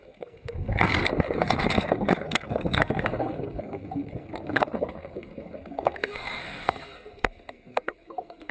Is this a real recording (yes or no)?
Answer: no